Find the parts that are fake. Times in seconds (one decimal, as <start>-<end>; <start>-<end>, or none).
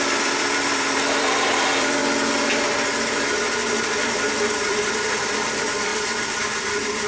0.0-2.0; 3.1-5.9; 6.4-7.1